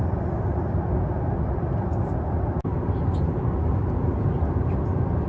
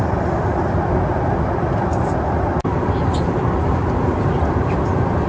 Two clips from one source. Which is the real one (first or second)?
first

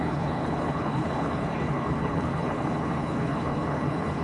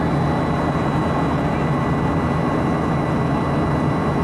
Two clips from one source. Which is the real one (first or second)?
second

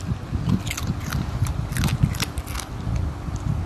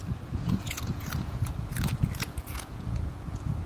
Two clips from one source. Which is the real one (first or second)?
first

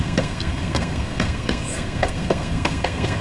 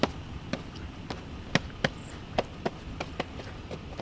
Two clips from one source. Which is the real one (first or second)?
second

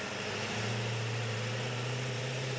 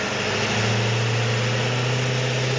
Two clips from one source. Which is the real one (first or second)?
second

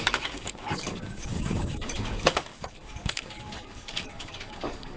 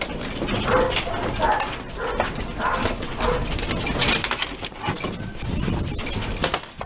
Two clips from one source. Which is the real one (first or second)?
second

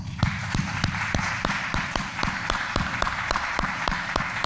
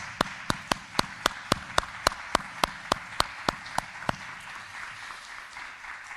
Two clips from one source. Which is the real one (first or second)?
second